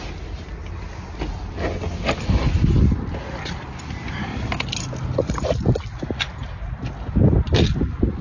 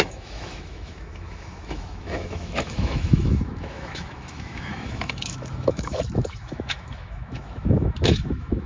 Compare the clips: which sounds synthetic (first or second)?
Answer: second